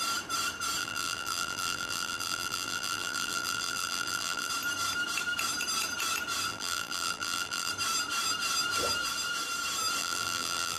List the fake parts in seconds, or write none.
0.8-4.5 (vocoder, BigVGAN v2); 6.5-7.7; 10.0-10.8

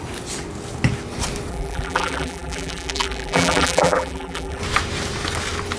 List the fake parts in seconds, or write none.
1.5-4.6 (vocoder, BigVGAN v2)

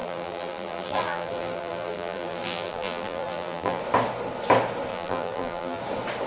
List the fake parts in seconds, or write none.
0.0-3.8 (vocoder, BigVGAN v2); 4.9-5.8

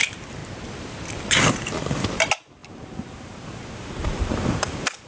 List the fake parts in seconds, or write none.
0.0-0.4 (vocoder, BigVGAN v2); 1.5-5.1

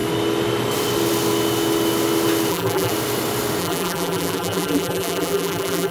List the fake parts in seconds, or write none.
2.5-2.9 (vocoder, BigVGAN v2); 3.6-5.9